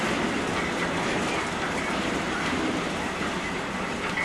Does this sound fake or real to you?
real